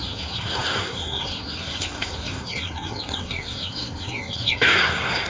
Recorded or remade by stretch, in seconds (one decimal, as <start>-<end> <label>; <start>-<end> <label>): 0.0-5.3 remade